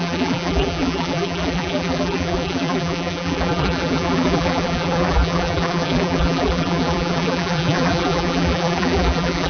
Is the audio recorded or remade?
remade